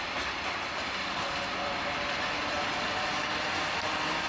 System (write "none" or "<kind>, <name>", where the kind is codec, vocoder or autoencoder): none